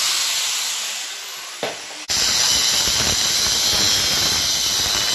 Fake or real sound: real